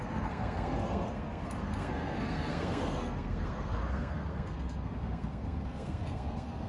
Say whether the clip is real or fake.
fake